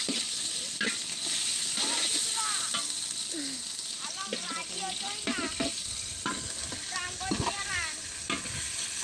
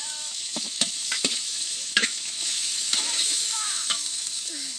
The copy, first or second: second